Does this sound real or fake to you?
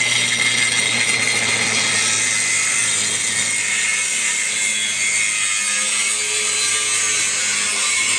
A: real